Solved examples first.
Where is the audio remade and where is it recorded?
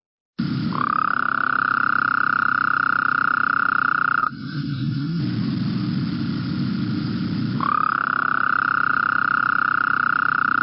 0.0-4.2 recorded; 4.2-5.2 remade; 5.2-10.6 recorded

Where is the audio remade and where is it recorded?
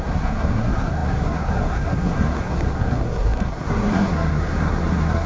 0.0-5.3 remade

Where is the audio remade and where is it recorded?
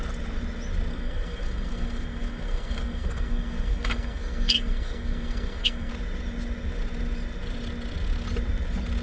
0.0-0.9 recorded; 0.9-5.9 remade; 5.9-9.0 recorded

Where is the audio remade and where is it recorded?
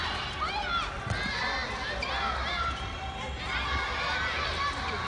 0.0-5.1 recorded